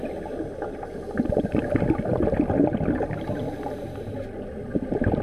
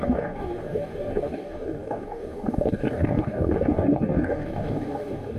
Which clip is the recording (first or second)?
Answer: first